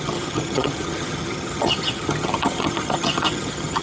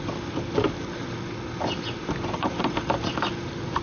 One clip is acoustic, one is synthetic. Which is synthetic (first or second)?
first